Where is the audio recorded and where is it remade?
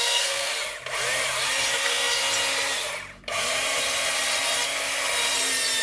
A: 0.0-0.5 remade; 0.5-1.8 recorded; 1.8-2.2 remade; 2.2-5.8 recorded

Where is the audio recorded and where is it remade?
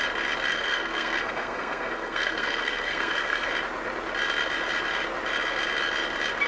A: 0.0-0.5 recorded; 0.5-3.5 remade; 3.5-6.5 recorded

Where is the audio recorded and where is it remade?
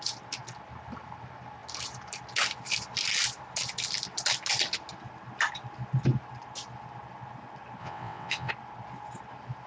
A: 0.0-7.8 recorded; 7.8-8.5 remade; 8.5-9.7 recorded